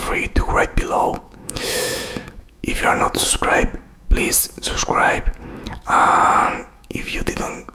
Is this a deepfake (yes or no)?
yes